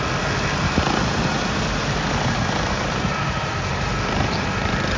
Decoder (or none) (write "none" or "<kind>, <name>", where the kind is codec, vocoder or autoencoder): vocoder, BigVGAN v2